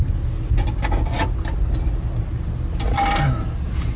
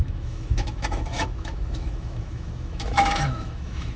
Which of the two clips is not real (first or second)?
second